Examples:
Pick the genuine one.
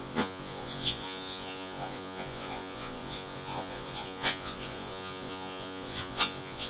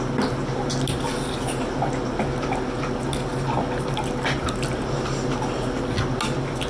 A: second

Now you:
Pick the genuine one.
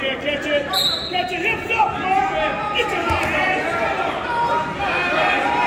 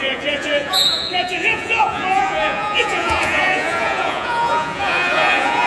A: first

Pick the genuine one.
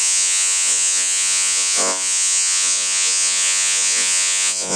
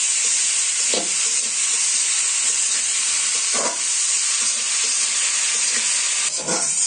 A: second